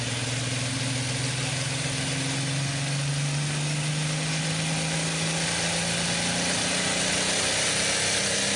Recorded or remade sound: recorded